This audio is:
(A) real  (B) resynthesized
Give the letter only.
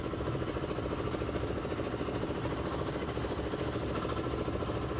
A